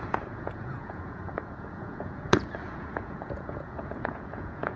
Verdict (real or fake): fake